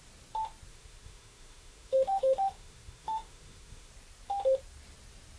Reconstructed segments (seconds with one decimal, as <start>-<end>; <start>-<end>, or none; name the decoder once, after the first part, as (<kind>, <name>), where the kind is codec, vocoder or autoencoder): 0.7-3.9 (autoencoder, DAC-VAE)